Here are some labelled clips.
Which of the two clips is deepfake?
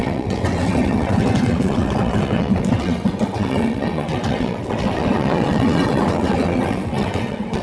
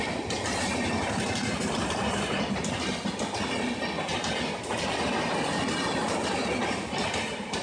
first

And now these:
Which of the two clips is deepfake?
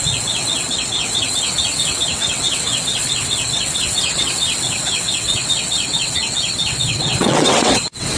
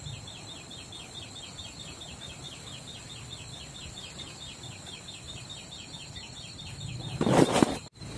first